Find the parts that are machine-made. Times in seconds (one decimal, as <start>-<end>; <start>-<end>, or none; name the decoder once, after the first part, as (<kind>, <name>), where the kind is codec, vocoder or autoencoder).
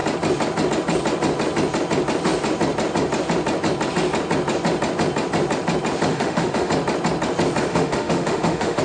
6.1-6.7 (autoencoder, DAC-VAE); 7.7-8.8